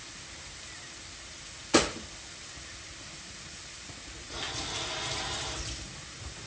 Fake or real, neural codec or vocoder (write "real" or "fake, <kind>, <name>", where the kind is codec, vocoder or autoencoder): real